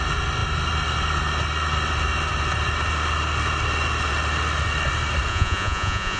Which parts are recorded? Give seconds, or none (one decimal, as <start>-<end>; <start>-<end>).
0.0-5.3